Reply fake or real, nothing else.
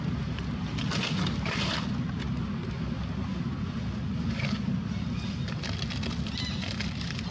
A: real